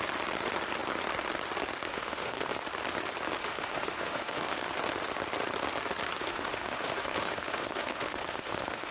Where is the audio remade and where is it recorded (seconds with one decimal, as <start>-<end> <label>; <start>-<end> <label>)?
0.0-1.9 recorded; 1.9-2.6 remade; 2.6-3.4 recorded; 3.4-4.7 remade; 4.7-6.2 recorded; 6.2-8.9 remade